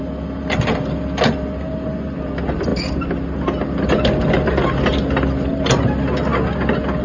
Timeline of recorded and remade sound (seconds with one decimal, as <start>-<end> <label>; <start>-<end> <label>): 0.0-7.0 recorded